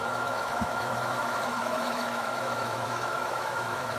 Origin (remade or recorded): remade